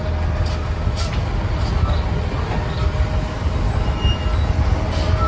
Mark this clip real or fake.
real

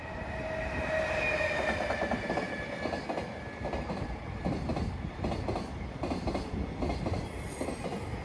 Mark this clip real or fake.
real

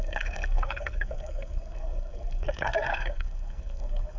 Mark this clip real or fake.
fake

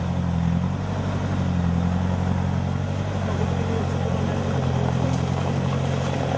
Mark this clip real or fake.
real